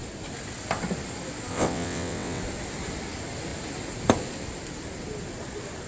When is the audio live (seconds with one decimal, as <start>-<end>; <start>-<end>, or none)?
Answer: 0.0-1.5; 2.4-5.9